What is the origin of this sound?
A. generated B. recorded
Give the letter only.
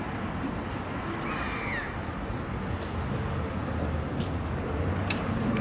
B